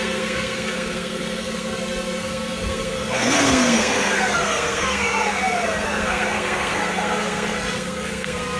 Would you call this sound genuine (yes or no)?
no